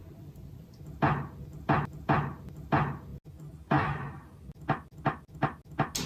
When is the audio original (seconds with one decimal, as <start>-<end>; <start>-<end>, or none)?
0.0-6.1